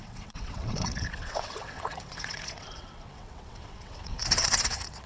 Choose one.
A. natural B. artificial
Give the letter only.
B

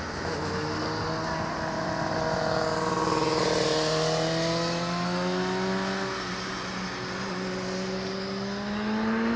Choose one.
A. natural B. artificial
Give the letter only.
A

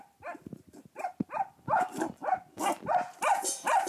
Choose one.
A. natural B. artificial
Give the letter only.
A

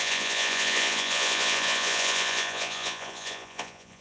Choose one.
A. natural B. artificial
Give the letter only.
B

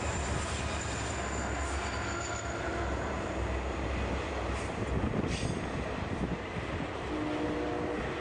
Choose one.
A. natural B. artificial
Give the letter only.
A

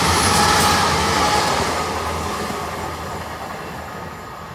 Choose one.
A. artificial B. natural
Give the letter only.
B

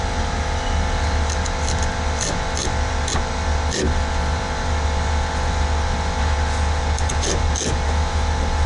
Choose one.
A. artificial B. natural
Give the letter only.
B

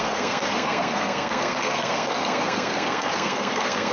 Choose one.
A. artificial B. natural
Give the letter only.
A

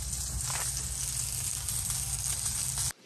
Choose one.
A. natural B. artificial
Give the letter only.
A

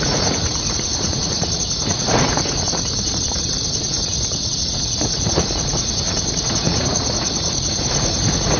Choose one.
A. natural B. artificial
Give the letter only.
B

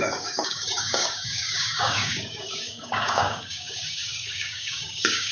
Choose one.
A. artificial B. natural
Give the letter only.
A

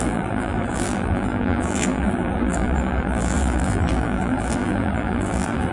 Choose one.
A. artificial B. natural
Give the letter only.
A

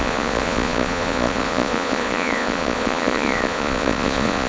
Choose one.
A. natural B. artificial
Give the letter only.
B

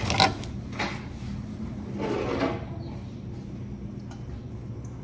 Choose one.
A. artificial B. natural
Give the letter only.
B